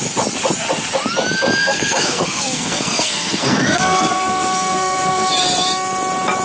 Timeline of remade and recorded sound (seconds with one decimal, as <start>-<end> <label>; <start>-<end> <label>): 0.0-1.6 recorded; 1.6-5.3 remade; 5.3-6.4 recorded